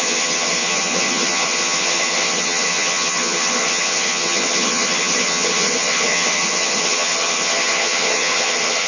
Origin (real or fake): fake